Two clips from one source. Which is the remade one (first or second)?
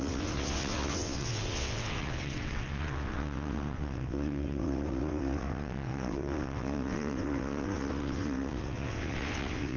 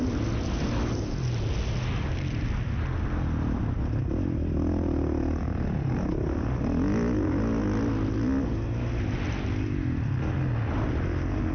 first